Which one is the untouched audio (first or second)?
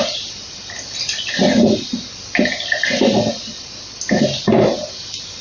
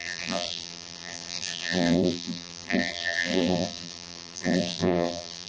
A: first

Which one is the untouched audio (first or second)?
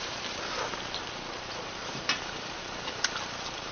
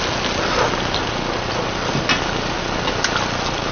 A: second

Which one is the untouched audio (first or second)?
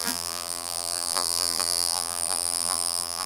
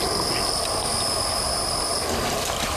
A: second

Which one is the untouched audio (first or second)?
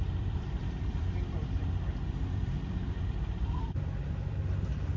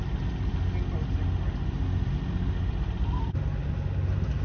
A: second